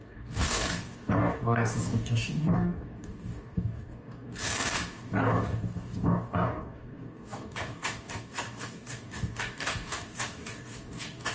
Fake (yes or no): yes